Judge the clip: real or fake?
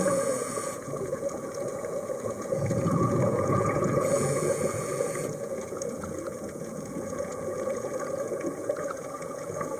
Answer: fake